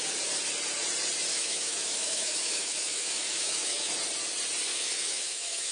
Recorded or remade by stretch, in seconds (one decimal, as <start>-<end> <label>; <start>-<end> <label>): 0.0-1.3 recorded; 1.3-3.9 remade; 3.9-4.7 recorded; 4.7-5.7 remade

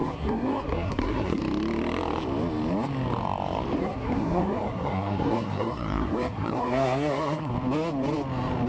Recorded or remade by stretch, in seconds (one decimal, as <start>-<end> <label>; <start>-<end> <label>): 0.0-1.4 remade; 1.4-3.8 recorded; 3.8-7.5 remade; 7.5-8.7 recorded